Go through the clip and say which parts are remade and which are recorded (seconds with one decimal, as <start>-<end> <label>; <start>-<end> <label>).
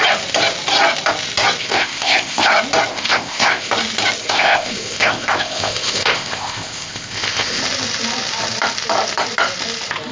0.0-1.6 recorded; 1.6-2.5 remade; 2.5-2.9 recorded; 2.9-3.7 remade; 3.7-4.2 recorded; 4.2-7.6 remade; 7.6-10.1 recorded